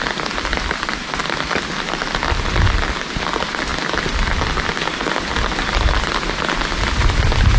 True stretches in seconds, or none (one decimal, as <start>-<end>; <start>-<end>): 0.0-7.6